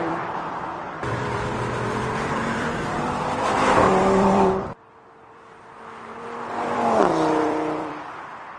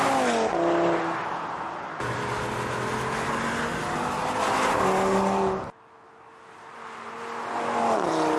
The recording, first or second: second